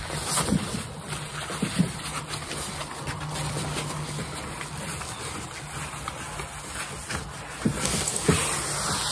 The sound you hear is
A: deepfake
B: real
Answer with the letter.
B